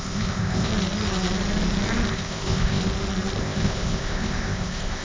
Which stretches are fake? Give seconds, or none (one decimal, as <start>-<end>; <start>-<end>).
0.0-0.7; 2.1-2.8; 3.4-5.0